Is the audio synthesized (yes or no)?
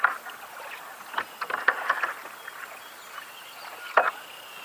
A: no